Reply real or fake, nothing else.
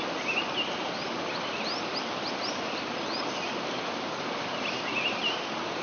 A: real